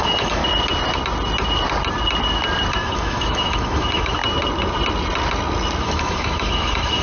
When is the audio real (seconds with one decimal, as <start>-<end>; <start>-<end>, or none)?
0.4-2.7; 4.2-5.8